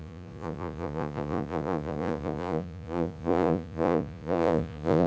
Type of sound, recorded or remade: remade